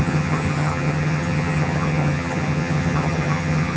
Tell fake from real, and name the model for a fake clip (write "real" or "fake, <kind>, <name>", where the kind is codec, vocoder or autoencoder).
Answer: fake, vocoder, HiFi-GAN